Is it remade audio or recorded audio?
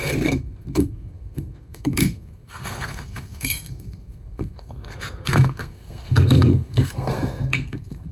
remade